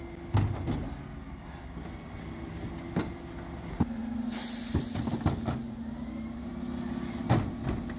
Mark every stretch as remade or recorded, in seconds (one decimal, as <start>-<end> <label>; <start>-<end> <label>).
0.0-8.0 recorded